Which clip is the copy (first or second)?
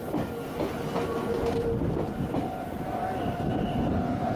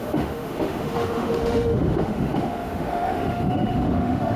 second